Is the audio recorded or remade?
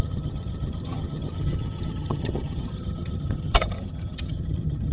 remade